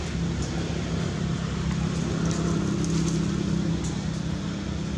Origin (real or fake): real